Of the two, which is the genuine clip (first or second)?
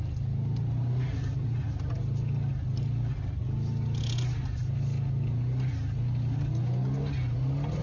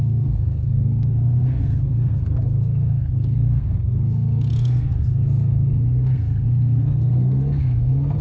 first